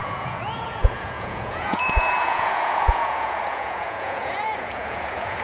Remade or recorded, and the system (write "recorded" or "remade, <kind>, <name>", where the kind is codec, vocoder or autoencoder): remade, vocoder, Vocos